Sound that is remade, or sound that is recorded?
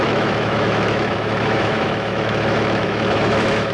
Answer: remade